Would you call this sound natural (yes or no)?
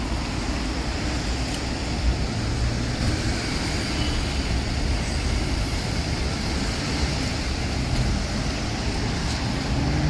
yes